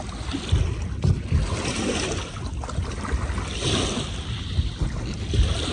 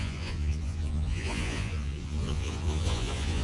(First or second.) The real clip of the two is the first